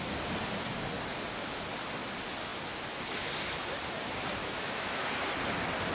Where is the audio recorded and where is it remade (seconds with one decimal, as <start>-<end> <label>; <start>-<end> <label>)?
0.0-4.4 recorded; 4.4-5.1 remade; 5.1-5.9 recorded